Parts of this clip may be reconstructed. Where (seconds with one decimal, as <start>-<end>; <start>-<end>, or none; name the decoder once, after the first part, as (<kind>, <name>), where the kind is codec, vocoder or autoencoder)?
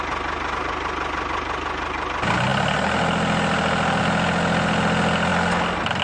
none